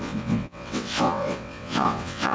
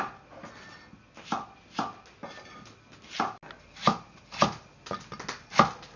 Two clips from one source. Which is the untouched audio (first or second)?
second